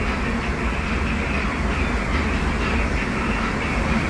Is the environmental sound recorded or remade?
recorded